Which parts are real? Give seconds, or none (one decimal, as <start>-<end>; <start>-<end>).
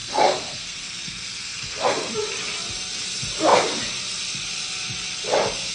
2.1-5.7